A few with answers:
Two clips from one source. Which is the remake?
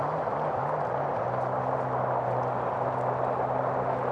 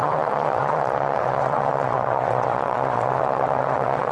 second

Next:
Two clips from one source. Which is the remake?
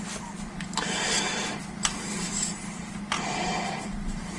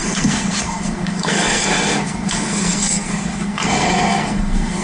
second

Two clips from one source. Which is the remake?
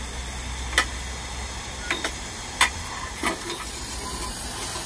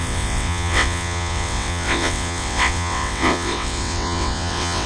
second